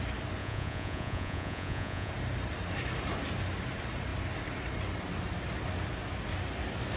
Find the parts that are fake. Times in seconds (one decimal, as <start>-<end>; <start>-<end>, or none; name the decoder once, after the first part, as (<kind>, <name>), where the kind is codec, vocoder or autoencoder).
0.4-2.1 (vocoder, Vocos)